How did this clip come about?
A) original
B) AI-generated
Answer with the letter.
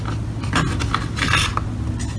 A